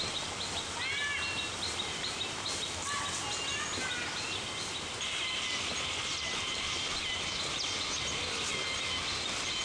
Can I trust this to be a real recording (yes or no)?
yes